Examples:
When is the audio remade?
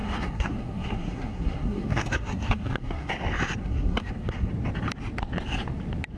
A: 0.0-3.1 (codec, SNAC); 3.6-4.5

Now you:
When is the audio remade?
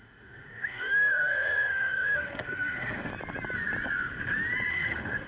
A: 0.0-3.1 (autoencoder, DAC-VAE); 4.7-5.3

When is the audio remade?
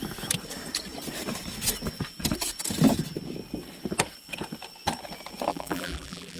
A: 5.5-6.4 (vocoder, BigVGAN v2)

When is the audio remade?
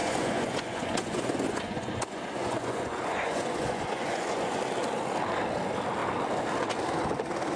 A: 0.0-4.6 (vocoder, Vocos)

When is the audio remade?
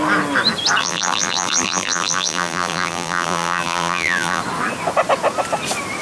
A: 0.8-4.4 (vocoder, BigVGAN v2)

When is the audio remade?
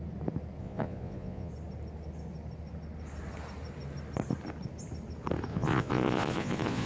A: 0.6-1.5 (vocoder, Vocos); 5.5-6.9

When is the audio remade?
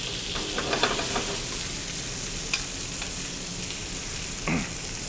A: none